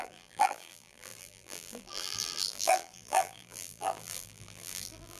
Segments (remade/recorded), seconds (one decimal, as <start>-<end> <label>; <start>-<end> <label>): 0.0-5.2 remade